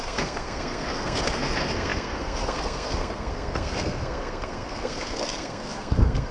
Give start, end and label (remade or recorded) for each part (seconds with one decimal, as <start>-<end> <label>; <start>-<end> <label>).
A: 0.0-6.3 remade